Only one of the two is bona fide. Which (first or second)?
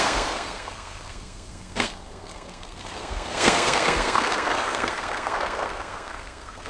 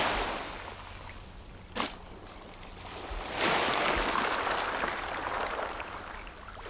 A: second